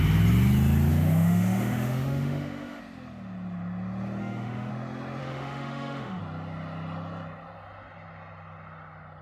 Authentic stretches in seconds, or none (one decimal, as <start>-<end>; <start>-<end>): 0.0-0.9; 2.8-4.2; 4.7-5.2; 6.2-9.2